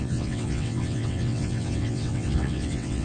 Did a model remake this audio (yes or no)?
yes